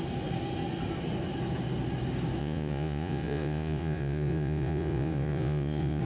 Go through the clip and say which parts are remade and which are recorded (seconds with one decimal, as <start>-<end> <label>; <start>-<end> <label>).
0.0-2.4 recorded; 2.4-6.0 remade